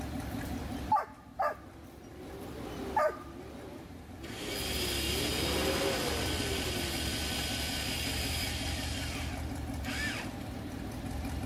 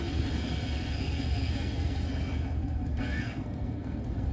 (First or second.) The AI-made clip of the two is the second